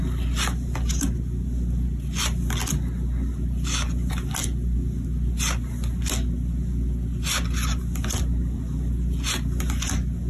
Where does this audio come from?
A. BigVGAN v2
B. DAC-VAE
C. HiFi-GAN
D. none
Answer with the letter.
D